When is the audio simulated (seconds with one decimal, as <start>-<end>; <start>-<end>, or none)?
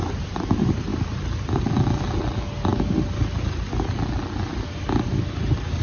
none